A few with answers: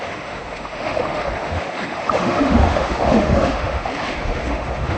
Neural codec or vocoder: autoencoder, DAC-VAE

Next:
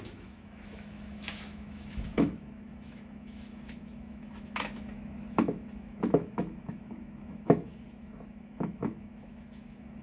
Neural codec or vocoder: autoencoder, DAC-VAE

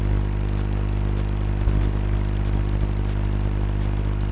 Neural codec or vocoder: none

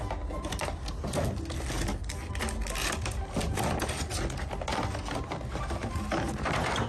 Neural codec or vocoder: none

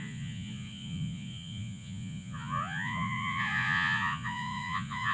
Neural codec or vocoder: vocoder, Vocos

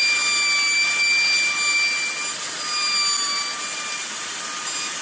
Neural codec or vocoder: none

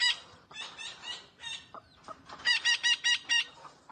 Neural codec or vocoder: vocoder, BigVGAN v2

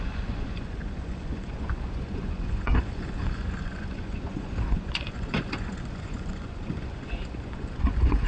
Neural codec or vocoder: vocoder, Vocos